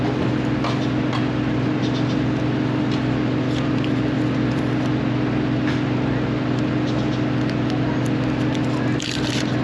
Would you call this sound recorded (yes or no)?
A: yes